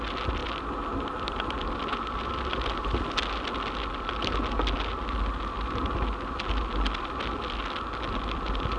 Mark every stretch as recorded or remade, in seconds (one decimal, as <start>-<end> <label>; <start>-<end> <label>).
0.0-8.8 recorded